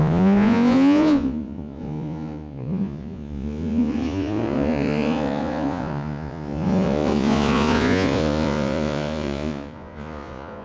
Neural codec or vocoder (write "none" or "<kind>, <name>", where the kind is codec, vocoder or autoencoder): vocoder, Vocos